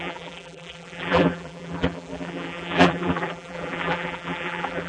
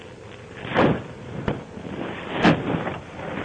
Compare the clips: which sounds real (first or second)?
second